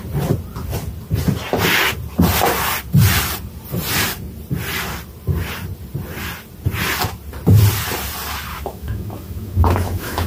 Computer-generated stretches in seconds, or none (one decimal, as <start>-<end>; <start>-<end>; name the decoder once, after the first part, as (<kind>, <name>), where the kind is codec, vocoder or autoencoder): 8.5-10.3 (autoencoder, DAC-VAE)